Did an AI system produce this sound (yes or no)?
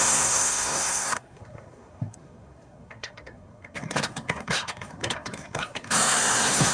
yes